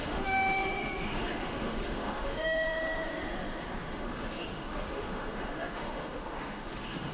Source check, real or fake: fake